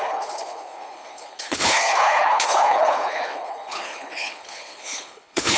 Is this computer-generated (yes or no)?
yes